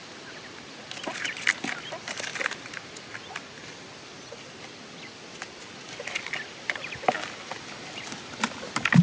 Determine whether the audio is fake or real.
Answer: real